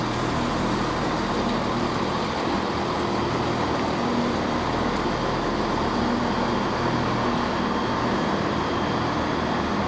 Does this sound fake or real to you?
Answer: real